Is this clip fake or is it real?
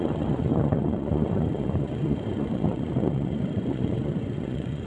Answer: fake